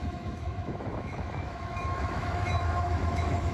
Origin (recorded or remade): remade